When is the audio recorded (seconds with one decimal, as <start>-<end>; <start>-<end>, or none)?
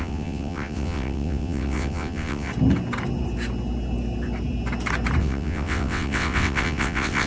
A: 2.5-5.2